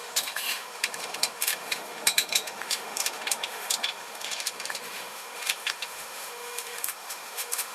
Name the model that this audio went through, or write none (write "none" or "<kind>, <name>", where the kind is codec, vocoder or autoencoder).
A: autoencoder, DAC-VAE